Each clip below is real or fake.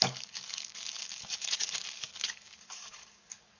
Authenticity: fake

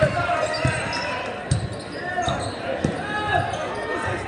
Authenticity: real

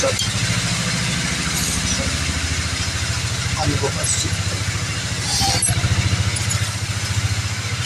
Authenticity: real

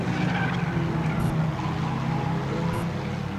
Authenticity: real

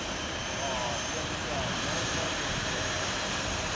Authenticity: fake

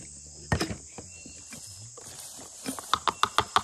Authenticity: real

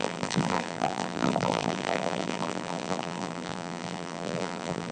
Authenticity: fake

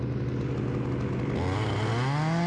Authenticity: real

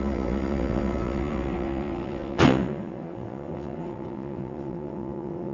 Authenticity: fake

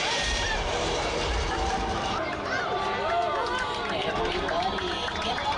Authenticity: fake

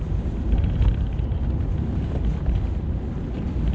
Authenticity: real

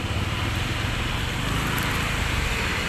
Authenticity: fake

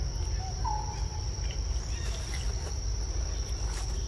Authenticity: real